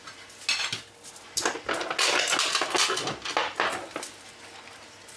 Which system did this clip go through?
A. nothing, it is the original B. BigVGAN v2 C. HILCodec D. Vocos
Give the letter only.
A